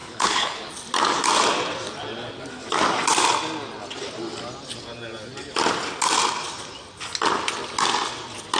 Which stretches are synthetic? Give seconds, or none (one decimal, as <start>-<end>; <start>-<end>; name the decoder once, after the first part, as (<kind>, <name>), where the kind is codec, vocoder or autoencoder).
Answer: 0.0-0.7 (codec, HILCodec)